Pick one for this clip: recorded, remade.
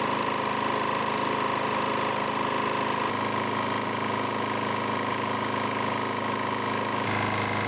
recorded